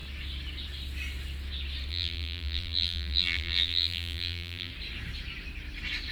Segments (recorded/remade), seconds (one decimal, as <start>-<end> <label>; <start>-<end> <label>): 0.0-1.9 recorded; 1.9-4.7 remade; 4.7-6.1 recorded